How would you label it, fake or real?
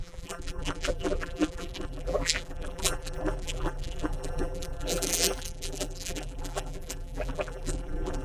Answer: fake